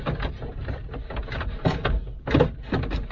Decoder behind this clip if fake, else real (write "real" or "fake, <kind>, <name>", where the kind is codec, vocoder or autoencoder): real